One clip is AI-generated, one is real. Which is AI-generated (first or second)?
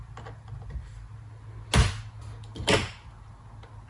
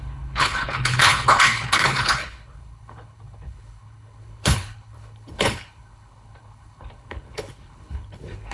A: second